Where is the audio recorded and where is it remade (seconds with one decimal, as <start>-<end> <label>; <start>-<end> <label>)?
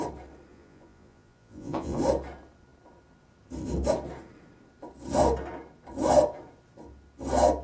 0.0-0.5 recorded; 0.5-2.0 remade; 2.0-7.6 recorded